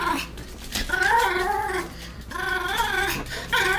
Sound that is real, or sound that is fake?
real